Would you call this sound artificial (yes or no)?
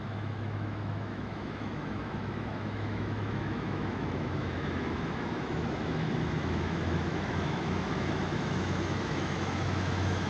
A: yes